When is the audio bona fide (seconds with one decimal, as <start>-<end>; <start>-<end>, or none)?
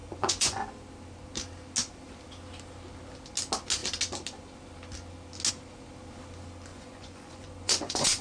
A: 0.7-6.7